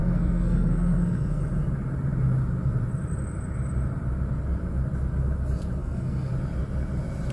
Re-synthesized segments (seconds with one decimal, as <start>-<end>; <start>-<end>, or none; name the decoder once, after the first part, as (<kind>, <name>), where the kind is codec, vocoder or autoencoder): 0.0-1.4 (codec, SNAC); 5.8-6.3